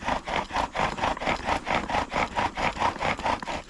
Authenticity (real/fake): real